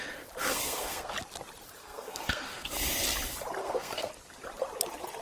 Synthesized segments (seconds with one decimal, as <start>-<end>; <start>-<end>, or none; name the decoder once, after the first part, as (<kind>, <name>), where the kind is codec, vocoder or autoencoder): 0.4-1.1 (codec, SNAC); 1.8-2.7; 3.6-4.1